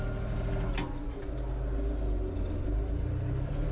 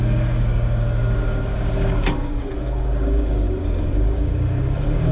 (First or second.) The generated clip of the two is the second